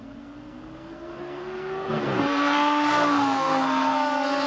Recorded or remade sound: remade